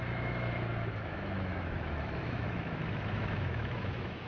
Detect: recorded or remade remade